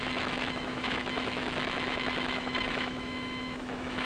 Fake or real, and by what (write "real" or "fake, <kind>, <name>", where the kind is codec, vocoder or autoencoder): fake, autoencoder, DAC-VAE